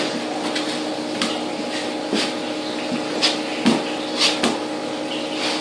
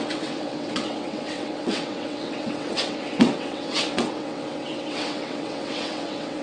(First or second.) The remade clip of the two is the second